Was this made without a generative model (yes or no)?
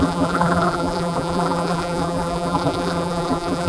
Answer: no